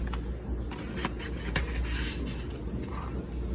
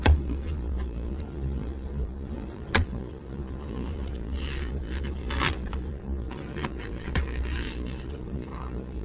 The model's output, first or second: second